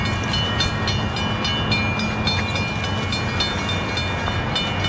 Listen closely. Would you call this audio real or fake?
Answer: real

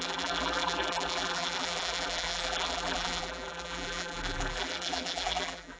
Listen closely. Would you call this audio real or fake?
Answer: fake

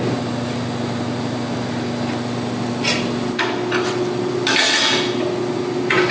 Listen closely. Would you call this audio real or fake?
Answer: real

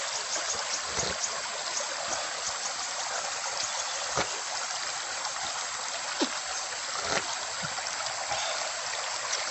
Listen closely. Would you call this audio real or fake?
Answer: real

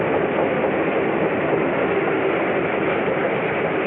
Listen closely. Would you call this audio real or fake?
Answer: real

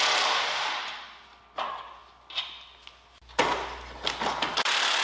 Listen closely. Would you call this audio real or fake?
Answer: real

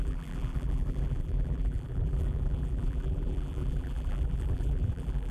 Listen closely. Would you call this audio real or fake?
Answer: fake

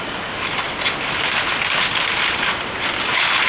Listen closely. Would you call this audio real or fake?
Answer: real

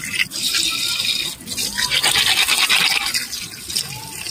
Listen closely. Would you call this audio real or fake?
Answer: real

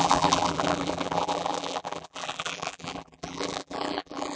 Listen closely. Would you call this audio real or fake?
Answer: fake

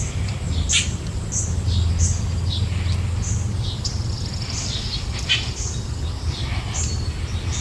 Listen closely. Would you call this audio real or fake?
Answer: real